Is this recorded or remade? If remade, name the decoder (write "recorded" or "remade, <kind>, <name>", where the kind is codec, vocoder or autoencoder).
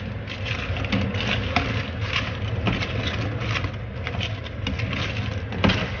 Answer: recorded